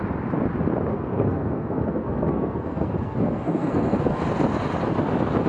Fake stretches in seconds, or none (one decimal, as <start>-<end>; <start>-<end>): 0.9-4.2